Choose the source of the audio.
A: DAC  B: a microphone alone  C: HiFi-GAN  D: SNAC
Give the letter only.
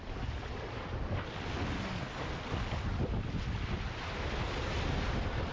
B